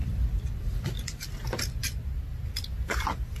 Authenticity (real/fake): real